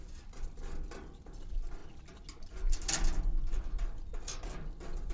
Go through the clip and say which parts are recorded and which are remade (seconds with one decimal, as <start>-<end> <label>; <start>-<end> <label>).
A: 0.0-5.1 recorded